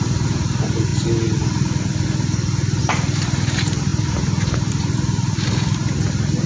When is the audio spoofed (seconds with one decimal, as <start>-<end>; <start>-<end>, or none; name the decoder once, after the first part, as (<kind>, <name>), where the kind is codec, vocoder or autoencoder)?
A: 0.0-0.9 (vocoder, BigVGAN v2); 2.8-6.5